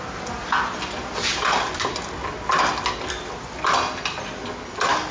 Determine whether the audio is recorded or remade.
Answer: recorded